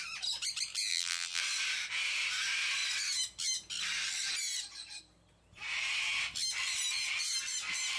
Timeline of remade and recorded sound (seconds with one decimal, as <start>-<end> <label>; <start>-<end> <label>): 0.0-0.9 recorded; 0.9-1.4 remade; 1.4-8.0 recorded